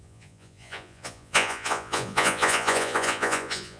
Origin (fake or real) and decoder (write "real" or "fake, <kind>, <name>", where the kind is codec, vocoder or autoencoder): fake, vocoder, Vocos